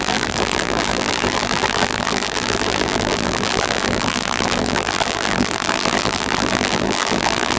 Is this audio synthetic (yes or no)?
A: yes